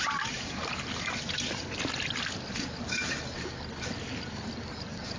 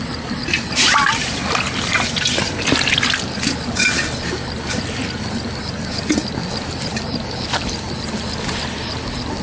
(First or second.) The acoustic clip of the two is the second